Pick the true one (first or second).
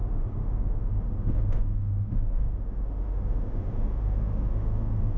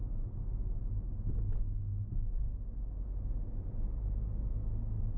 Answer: second